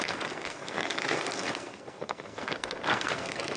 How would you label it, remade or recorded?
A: remade